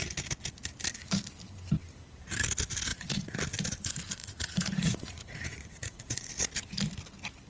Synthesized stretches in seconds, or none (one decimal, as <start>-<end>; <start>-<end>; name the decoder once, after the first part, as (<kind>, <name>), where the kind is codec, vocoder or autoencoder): 2.9-3.4 (vocoder, Vocos); 4.2-6.3